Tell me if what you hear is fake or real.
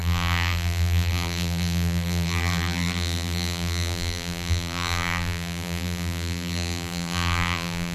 fake